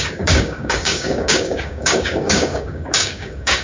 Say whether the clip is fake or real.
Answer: fake